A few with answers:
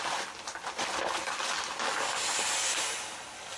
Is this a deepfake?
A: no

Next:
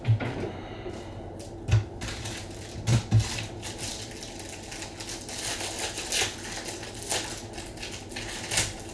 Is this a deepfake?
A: no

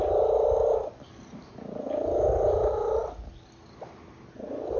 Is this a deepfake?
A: no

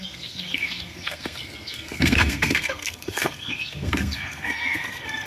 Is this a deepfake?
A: yes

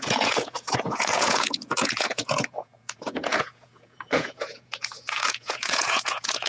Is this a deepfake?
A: yes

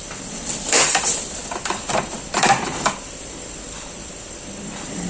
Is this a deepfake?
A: yes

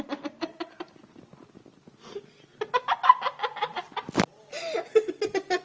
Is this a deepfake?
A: no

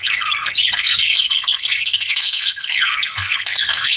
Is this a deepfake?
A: yes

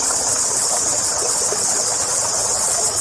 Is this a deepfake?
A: yes